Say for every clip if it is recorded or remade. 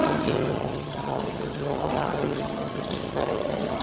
remade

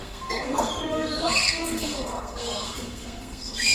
remade